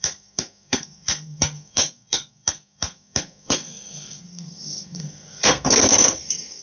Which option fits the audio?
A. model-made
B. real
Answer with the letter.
A